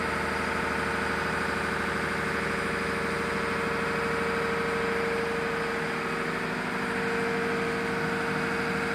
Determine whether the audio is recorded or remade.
recorded